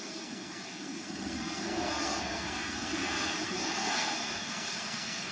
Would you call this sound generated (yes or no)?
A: yes